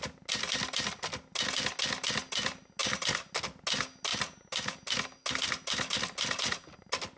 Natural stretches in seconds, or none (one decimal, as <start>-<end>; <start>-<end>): 0.0-7.2